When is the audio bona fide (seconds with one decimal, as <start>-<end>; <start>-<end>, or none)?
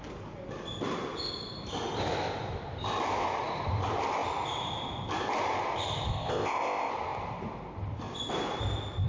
0.0-6.1; 6.9-9.1